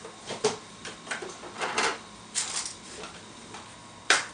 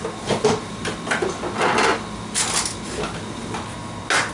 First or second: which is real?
second